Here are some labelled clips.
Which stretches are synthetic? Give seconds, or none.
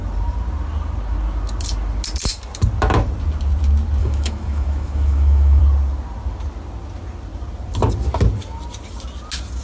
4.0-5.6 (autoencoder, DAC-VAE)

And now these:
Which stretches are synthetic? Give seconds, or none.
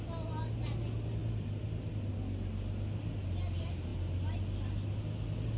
none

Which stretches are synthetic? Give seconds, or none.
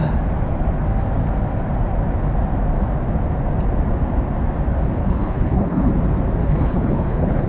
5.0-5.9 (codec, HILCodec); 6.4-7.5